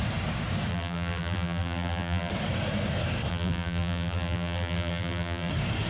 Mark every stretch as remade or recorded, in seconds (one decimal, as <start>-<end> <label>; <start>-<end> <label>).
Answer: 0.0-0.7 recorded; 0.7-2.3 remade; 2.3-3.3 recorded; 3.3-5.5 remade; 5.5-5.9 recorded